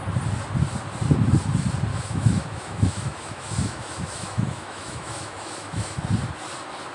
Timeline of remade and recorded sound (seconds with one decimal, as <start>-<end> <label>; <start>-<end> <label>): 0.0-1.9 recorded; 1.9-6.0 remade; 6.0-6.9 recorded